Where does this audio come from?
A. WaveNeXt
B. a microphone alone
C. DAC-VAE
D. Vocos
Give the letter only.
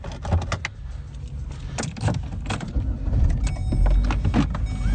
B